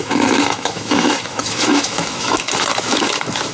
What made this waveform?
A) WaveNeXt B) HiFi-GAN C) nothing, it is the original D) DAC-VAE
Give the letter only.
D